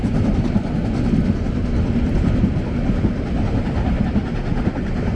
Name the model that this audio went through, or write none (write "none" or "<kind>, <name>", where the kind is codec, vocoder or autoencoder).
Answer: none